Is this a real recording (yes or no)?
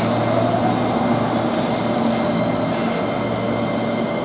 yes